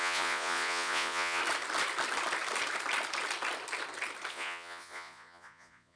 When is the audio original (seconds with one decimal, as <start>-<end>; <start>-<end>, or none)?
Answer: 1.4-4.3